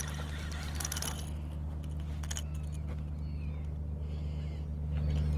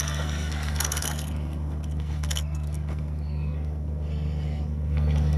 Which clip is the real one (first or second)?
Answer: first